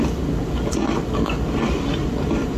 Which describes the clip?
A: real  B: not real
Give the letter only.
B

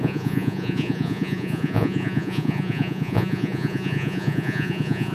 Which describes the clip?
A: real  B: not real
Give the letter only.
B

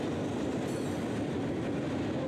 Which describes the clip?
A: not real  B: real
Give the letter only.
B